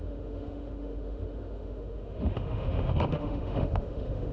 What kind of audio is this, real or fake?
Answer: fake